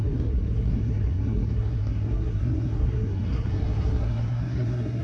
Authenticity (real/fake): fake